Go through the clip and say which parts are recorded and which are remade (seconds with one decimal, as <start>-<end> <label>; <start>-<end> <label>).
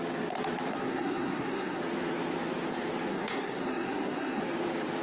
0.0-0.7 recorded; 0.7-1.8 remade; 1.8-3.1 recorded; 3.1-4.4 remade; 4.4-5.0 recorded